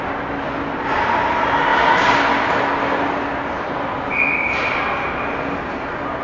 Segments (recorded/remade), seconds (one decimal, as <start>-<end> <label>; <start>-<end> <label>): 0.0-6.2 recorded